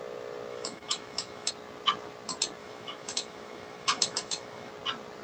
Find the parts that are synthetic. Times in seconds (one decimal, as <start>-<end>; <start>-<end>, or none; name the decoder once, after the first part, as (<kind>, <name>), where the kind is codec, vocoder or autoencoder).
0.5-1.5 (autoencoder, DAC-VAE); 2.6-4.7